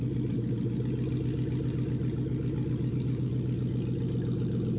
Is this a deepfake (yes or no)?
no